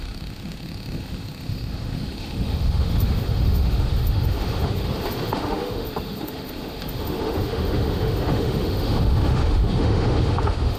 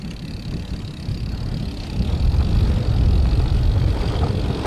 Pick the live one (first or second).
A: second